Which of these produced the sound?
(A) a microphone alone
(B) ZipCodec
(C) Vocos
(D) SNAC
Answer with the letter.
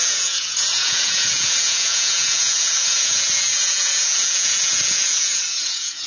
C